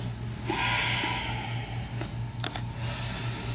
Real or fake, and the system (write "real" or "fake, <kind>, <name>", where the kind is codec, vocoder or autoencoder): real